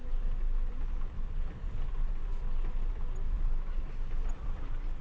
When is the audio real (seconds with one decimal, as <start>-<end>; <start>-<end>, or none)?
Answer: 0.0-5.0